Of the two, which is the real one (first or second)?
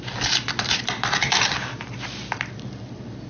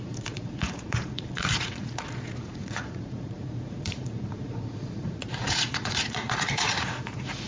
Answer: first